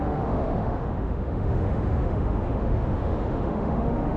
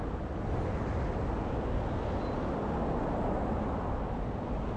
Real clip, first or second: second